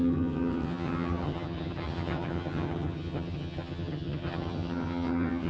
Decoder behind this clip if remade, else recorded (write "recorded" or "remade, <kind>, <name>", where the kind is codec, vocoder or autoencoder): remade, vocoder, HiFi-GAN